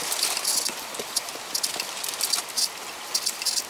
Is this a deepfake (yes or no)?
no